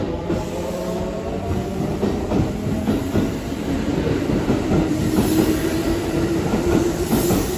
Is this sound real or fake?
fake